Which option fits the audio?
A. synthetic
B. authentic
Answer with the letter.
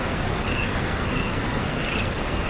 A